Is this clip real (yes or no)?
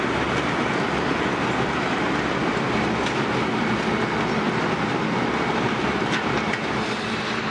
yes